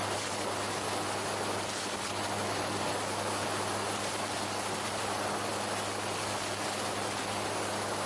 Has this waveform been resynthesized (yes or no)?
no